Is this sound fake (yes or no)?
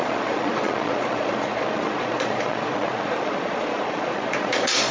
yes